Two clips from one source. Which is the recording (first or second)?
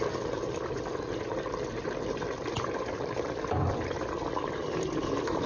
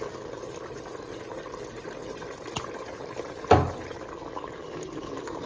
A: second